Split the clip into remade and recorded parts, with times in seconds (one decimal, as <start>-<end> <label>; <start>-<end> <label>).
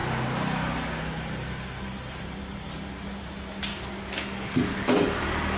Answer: 0.0-3.7 recorded; 3.7-5.6 remade